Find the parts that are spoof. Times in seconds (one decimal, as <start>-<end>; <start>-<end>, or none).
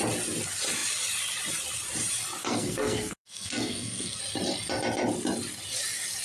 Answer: 2.4-4.2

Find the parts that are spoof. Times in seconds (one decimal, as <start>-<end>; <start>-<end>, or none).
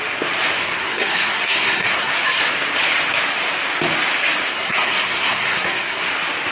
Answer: 0.6-2.1; 4.5-6.1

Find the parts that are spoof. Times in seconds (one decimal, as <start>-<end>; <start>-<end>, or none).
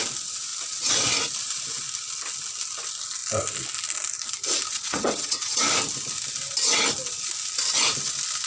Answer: 4.7-5.6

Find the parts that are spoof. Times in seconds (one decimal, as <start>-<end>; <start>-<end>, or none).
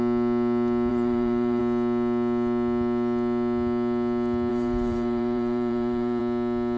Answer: 0.9-1.6; 4.5-6.2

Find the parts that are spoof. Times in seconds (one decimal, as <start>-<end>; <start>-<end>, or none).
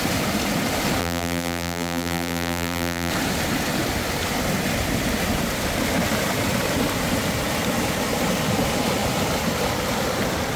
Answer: 1.0-3.1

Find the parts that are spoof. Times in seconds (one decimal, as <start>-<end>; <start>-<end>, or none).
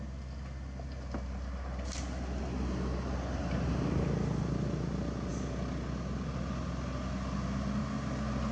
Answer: none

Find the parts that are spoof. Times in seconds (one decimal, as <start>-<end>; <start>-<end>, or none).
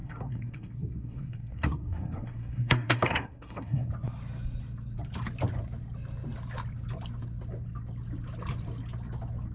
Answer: 0.0-3.9